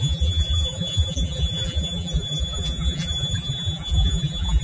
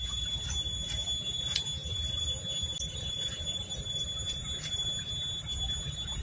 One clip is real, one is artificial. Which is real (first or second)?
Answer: second